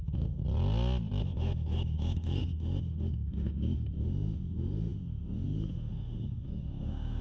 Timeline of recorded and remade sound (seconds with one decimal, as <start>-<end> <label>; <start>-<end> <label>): 0.0-0.4 remade; 0.4-1.2 recorded; 1.2-7.2 remade